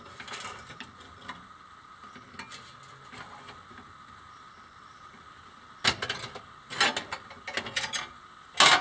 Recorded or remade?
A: recorded